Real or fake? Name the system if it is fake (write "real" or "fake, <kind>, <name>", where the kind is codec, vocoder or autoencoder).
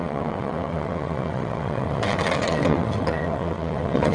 fake, vocoder, WaveNeXt